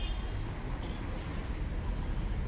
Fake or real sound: real